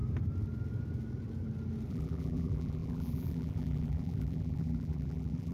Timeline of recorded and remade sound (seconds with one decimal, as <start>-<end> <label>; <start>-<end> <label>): 0.0-1.9 recorded; 1.9-5.5 remade